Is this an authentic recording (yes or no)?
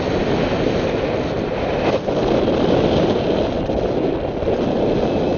yes